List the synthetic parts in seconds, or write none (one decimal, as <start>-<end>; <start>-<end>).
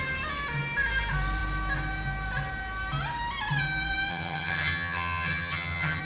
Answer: 4.1-6.0